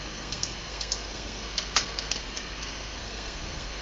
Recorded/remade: remade